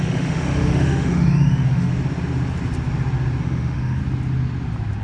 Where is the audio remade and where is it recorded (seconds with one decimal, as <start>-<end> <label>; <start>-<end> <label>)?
0.0-1.9 remade; 1.9-3.4 recorded; 3.4-4.0 remade; 4.0-5.0 recorded

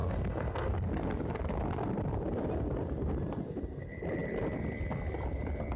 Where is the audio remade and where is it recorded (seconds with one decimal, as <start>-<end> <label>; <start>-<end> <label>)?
0.0-0.7 remade; 0.7-5.8 recorded